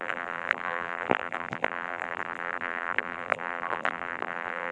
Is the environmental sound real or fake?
fake